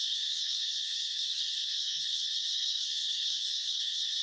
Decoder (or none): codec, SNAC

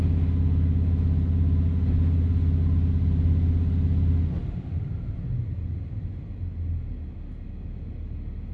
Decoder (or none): none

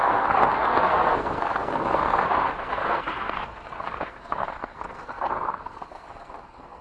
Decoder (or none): codec, SNAC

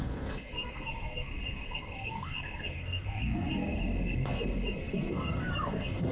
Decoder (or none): codec, SNAC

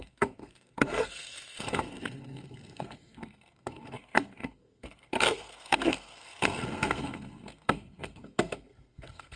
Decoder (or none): codec, SNAC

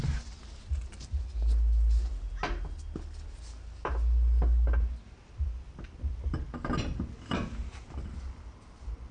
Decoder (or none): none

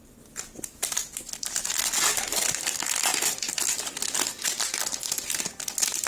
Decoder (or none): none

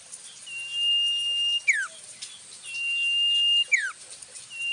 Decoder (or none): none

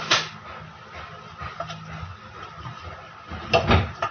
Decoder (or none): none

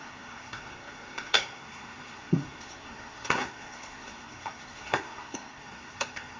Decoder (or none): codec, SNAC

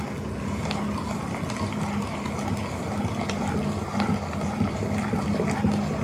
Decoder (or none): none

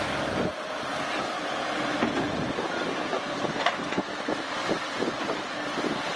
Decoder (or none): none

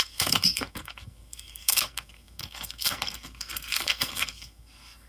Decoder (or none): codec, SNAC